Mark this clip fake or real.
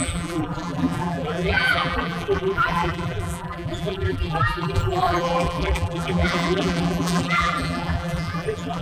fake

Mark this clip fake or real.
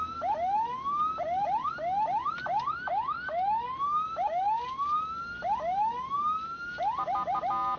real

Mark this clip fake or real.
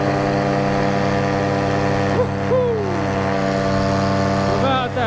real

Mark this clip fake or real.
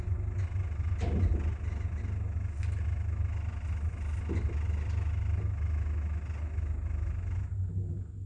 real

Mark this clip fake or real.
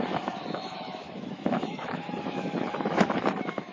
fake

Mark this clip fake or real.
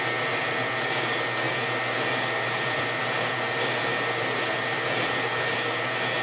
real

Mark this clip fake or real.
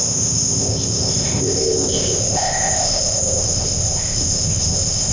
fake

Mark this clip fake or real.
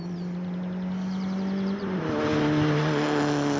real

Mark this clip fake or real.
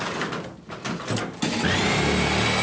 real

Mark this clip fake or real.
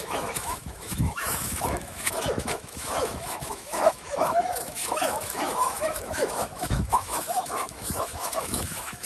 fake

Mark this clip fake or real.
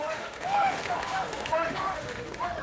fake